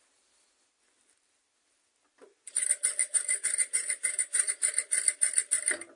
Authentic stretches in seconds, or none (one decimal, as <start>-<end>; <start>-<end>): 0.0-3.0; 4.5-6.0